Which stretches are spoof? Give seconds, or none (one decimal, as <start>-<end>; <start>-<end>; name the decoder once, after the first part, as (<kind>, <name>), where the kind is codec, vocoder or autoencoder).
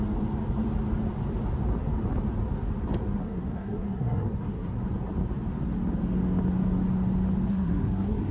3.2-4.8 (codec, SNAC); 7.5-8.3